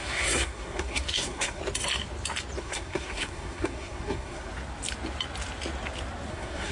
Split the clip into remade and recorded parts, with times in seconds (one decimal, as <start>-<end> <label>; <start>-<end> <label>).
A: 0.0-1.6 remade; 1.6-2.6 recorded; 2.6-4.5 remade; 4.5-6.3 recorded; 6.3-6.7 remade